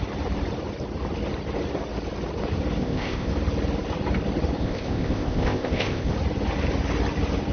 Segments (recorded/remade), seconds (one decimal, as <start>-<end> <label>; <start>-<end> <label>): 0.0-2.8 recorded; 2.8-3.3 remade; 3.3-4.6 recorded; 4.6-6.1 remade; 6.1-7.5 recorded